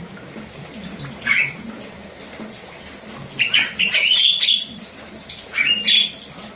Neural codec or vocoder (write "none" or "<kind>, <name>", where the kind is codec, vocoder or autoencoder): none